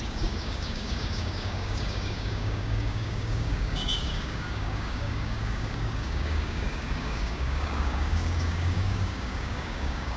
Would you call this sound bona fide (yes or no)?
no